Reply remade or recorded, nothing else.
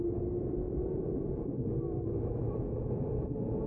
remade